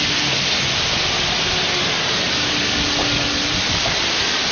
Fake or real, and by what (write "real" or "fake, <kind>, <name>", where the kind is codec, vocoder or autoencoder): real